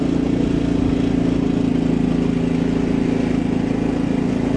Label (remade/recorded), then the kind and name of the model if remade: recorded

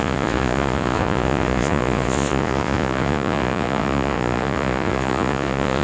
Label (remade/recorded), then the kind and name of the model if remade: remade, vocoder, Vocos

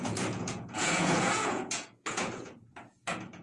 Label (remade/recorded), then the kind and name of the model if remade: remade, vocoder, Vocos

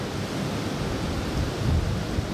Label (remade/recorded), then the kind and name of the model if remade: recorded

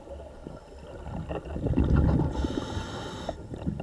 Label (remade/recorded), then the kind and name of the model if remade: recorded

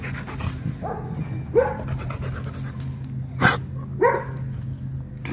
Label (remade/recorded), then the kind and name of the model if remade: recorded